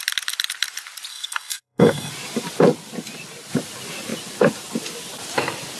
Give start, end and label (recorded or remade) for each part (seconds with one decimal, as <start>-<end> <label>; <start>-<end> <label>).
0.0-1.1 recorded; 1.1-2.1 remade; 2.1-5.8 recorded